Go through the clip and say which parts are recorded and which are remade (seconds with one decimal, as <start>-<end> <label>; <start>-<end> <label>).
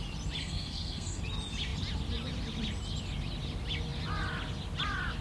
0.0-0.4 recorded; 0.4-1.2 remade; 1.2-5.2 recorded